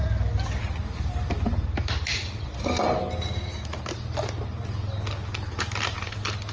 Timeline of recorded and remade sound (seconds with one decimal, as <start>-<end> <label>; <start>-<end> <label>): 0.0-6.5 recorded